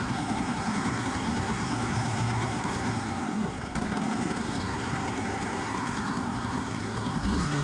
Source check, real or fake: fake